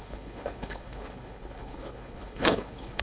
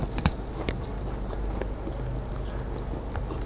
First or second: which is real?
second